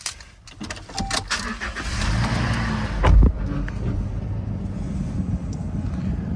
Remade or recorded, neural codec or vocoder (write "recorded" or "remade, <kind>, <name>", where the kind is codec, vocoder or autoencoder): recorded